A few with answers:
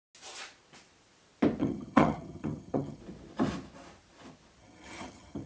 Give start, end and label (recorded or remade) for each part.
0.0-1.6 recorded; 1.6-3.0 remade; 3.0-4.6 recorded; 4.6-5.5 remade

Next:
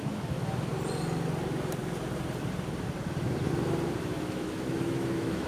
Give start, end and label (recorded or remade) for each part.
0.0-0.7 remade; 0.7-4.0 recorded; 4.0-5.5 remade

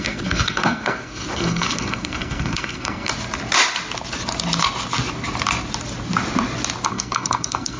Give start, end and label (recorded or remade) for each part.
0.0-3.1 remade; 3.1-6.9 recorded; 6.9-7.8 remade

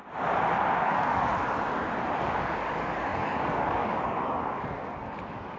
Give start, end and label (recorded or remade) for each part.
0.0-0.8 recorded; 0.8-1.3 remade; 1.3-2.2 recorded; 2.2-5.6 remade

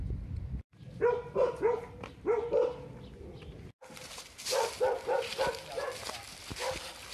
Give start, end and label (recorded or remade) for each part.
0.0-7.1 recorded

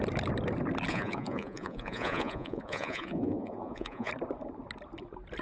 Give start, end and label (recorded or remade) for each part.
0.0-0.9 recorded; 0.9-4.1 remade; 4.1-5.4 recorded

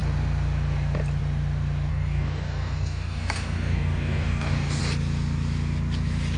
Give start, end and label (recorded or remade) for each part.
0.0-1.9 recorded; 1.9-4.8 remade; 4.8-6.4 recorded